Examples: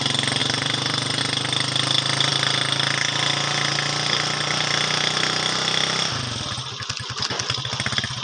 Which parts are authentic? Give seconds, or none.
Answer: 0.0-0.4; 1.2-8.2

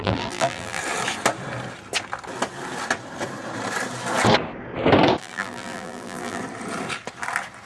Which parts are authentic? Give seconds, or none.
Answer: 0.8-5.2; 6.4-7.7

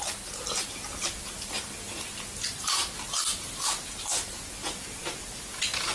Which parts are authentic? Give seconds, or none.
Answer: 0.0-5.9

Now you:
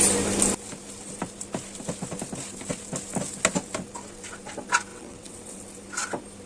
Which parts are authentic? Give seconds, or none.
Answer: 0.0-4.9; 5.6-6.5